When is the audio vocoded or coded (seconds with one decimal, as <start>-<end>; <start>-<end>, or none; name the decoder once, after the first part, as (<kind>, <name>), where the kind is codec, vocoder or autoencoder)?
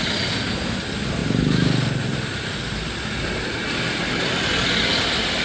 none